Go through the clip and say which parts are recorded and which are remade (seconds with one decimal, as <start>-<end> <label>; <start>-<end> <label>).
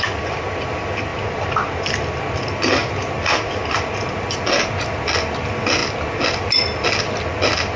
0.0-1.1 recorded; 1.1-2.2 remade; 2.2-7.8 recorded